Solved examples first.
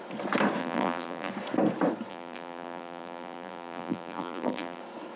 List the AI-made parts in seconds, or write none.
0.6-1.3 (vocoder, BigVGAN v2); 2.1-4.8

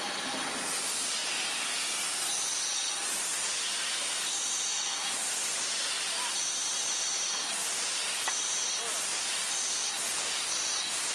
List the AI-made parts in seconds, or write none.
1.2-1.7 (vocoder, BigVGAN v2); 9.1-10.1

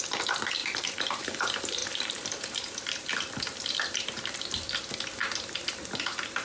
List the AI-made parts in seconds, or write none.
0.6-1.2 (vocoder, BigVGAN v2); 1.8-4.4

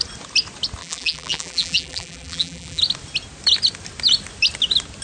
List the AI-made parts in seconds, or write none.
0.8-2.8 (vocoder, BigVGAN v2)

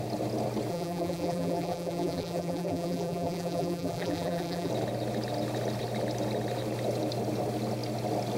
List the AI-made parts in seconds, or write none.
0.7-4.7 (vocoder, BigVGAN v2)

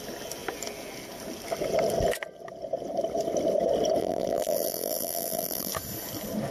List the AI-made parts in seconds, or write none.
4.0-5.7 (vocoder, BigVGAN v2)